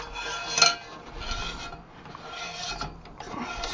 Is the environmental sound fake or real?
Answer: real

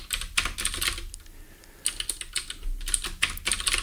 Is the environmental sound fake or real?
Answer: real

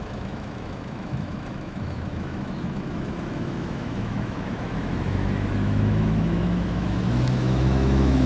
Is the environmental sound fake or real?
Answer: fake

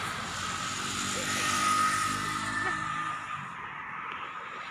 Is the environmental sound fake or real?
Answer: real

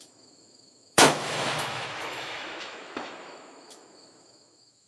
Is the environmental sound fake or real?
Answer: fake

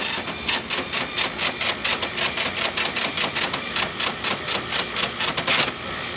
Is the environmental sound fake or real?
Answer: real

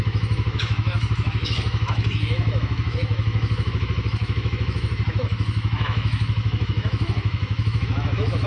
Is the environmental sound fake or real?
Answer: fake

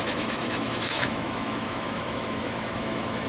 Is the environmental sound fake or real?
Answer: fake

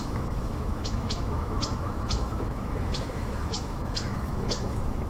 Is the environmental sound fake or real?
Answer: fake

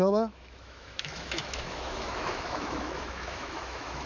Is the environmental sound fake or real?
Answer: fake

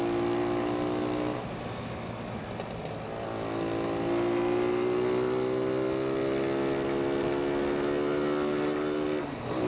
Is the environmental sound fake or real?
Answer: real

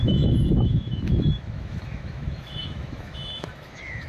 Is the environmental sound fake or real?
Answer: fake